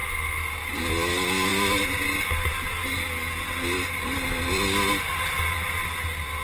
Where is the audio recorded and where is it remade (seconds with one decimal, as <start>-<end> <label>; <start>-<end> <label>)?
0.0-6.4 recorded